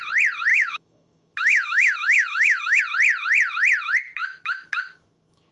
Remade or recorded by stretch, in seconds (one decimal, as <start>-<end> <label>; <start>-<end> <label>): 0.0-0.5 recorded; 0.5-2.8 remade; 2.8-4.2 recorded; 4.2-5.5 remade